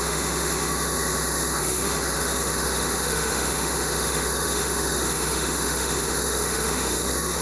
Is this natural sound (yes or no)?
no